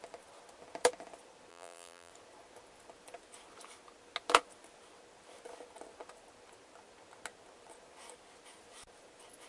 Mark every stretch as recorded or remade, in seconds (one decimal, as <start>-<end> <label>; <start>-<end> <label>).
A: 0.0-1.5 recorded; 1.5-2.1 remade; 2.1-9.5 recorded